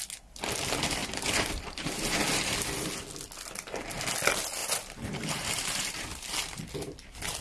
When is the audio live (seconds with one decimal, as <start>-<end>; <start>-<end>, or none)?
0.0-1.0; 2.4-4.6; 6.1-7.4